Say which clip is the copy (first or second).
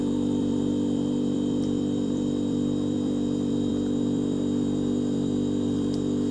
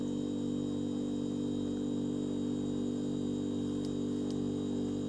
first